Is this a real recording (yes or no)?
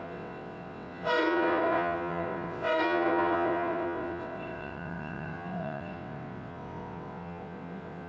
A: no